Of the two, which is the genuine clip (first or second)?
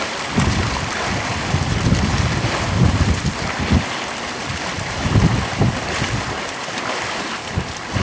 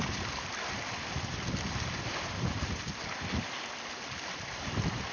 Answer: second